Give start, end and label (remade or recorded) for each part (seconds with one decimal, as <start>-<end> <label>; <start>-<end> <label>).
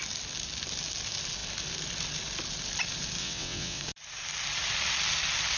0.0-3.2 recorded; 3.2-3.8 remade; 3.8-5.6 recorded